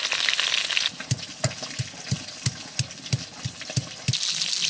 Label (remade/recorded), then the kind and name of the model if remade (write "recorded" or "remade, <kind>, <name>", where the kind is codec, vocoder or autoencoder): recorded